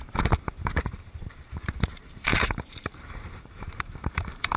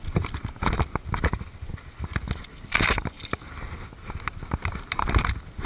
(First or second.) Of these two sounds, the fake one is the first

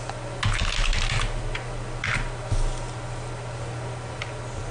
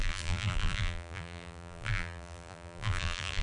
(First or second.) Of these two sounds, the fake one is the second